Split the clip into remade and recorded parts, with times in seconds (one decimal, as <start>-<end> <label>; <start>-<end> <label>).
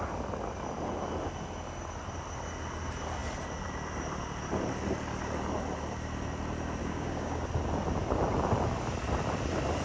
0.0-6.8 recorded; 6.8-7.5 remade; 7.5-9.8 recorded